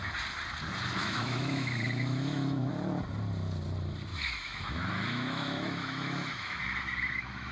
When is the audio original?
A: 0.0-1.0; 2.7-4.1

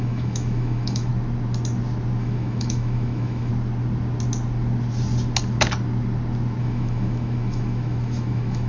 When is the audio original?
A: 1.1-2.2; 3.5-6.6

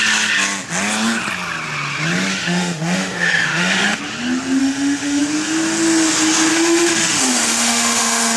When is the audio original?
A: 0.0-2.3; 4.0-4.6; 5.2-6.5

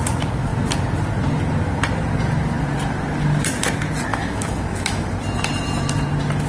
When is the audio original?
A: 0.0-4.1; 5.1-6.5

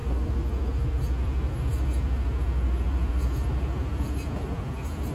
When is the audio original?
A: 0.0-5.1

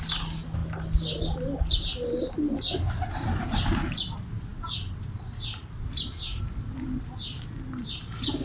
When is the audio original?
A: 0.0-8.4